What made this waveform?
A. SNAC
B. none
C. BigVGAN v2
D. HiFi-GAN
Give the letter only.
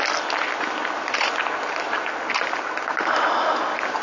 B